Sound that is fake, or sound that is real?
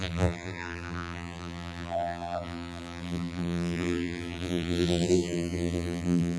fake